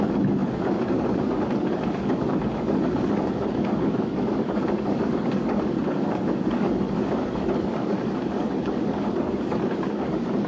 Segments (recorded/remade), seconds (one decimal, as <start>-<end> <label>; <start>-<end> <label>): 0.0-10.5 remade